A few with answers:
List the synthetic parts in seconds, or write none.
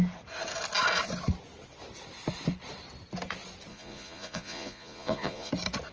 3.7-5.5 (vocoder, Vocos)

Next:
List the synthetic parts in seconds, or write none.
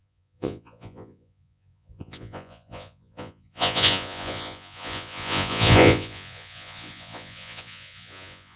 0.0-8.6 (vocoder, Vocos)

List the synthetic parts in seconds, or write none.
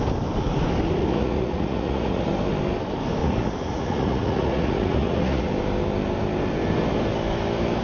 1.0-2.3 (vocoder, Vocos); 3.2-5.5